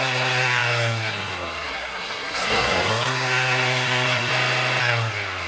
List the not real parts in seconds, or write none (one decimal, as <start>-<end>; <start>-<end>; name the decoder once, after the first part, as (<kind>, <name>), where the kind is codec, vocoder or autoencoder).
0.0-4.3 (codec, SNAC); 4.8-5.5